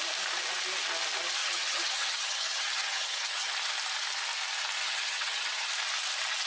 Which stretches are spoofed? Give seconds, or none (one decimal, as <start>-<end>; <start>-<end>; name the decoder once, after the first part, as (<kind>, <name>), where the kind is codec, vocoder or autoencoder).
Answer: 1.4-3.5 (vocoder, HiFi-GAN); 4.8-5.7